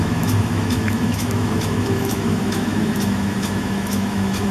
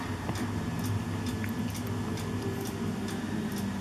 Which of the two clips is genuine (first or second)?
second